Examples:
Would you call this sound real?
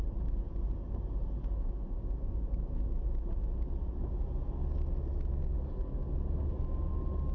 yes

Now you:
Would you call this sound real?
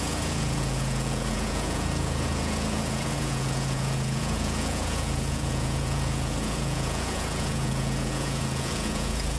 no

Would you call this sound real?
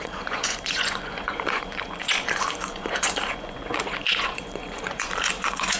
no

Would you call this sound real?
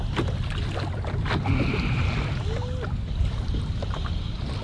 yes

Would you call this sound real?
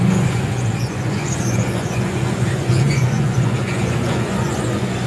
no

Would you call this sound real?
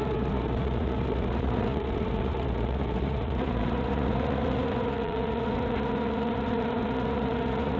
no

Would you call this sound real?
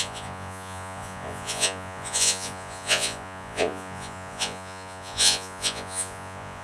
no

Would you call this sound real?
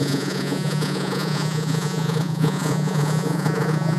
no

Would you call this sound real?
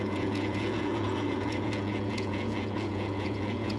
no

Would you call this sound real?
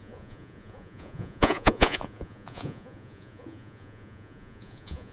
no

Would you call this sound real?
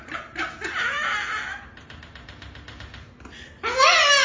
yes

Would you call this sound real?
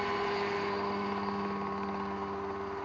yes